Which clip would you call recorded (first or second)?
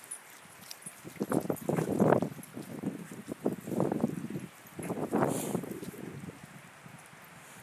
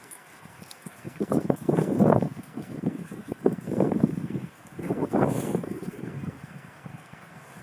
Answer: first